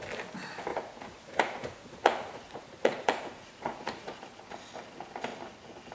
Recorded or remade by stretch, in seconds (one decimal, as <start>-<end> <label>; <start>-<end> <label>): 0.0-0.7 recorded; 0.7-4.2 remade; 4.2-5.9 recorded

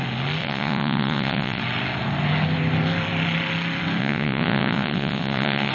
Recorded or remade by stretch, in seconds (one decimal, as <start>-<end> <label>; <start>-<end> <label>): 0.0-0.4 recorded; 0.4-1.6 remade; 1.6-4.0 recorded; 4.0-5.7 remade

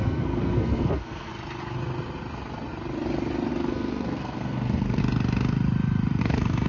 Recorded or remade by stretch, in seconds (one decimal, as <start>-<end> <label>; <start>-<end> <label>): 0.0-1.3 remade; 1.3-3.5 recorded; 3.5-5.0 remade; 5.0-6.2 recorded; 6.2-6.7 remade

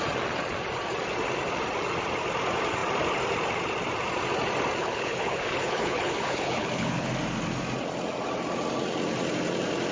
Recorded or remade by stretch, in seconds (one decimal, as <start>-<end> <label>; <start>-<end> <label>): 0.0-4.8 recorded; 4.8-7.1 remade; 7.1-9.9 recorded

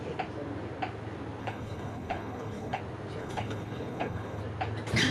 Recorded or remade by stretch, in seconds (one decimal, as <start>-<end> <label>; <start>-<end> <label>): 0.0-1.4 recorded; 1.4-2.8 remade; 2.8-3.2 recorded; 3.2-4.4 remade; 4.4-5.1 recorded

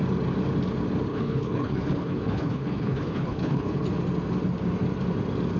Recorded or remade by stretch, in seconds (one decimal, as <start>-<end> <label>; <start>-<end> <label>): 0.0-1.1 recorded; 1.1-3.9 remade; 3.9-5.6 recorded